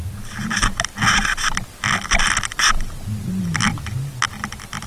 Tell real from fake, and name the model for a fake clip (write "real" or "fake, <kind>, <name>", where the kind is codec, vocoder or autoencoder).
real